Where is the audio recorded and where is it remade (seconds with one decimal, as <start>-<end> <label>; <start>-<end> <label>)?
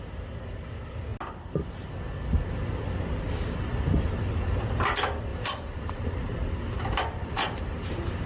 0.0-5.3 recorded; 5.3-6.3 remade; 6.3-7.2 recorded; 7.2-7.8 remade; 7.8-8.3 recorded